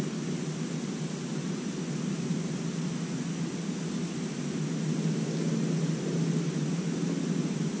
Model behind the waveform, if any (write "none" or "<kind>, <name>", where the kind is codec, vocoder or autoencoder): none